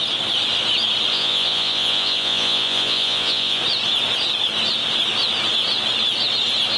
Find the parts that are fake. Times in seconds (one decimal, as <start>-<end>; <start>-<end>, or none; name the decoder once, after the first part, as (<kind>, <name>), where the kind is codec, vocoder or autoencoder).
1.1-3.6 (vocoder, Vocos)